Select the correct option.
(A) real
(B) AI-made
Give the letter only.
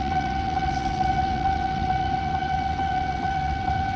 B